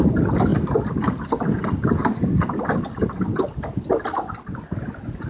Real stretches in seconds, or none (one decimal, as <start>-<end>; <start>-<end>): 0.0-5.3